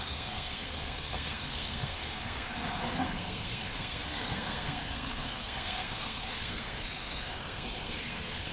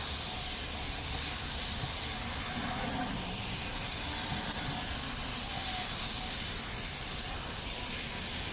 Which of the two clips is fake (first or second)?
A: first